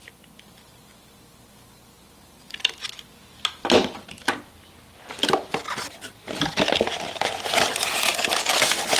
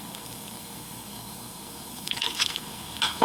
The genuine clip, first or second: first